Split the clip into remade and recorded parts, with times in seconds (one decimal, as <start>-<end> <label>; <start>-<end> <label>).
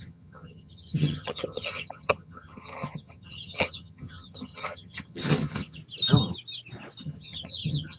0.0-5.8 remade; 5.8-7.0 recorded; 7.0-8.0 remade